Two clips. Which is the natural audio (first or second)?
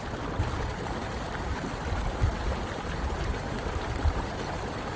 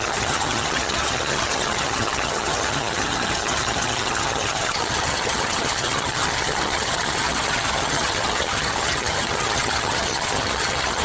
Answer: first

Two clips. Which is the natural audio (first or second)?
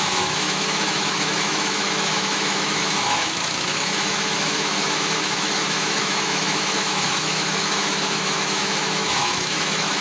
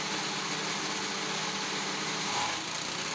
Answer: second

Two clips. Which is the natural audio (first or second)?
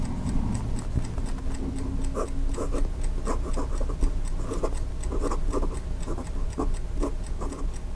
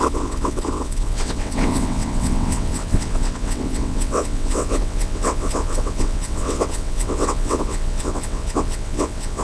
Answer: first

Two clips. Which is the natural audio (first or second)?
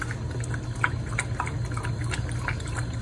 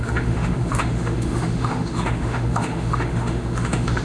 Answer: first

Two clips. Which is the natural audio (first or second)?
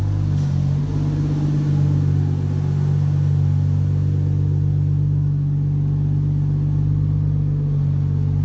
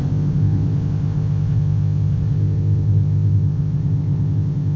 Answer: first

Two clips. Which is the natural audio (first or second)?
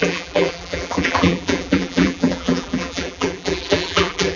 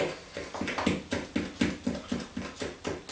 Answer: second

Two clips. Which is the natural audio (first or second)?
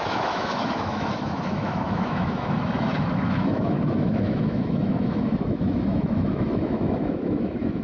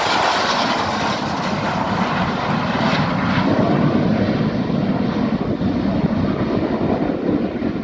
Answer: second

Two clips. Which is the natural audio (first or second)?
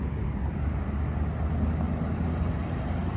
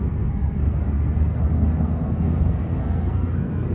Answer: first